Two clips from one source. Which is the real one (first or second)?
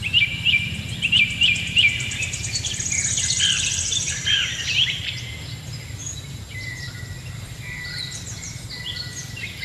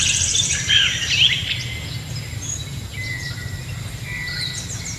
second